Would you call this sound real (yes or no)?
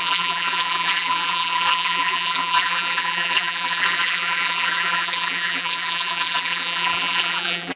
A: no